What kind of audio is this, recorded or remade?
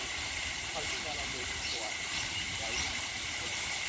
remade